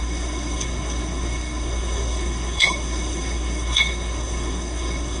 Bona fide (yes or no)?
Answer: no